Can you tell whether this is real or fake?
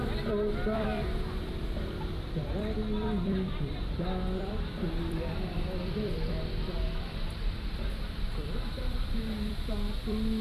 fake